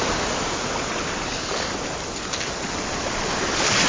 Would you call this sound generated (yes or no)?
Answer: no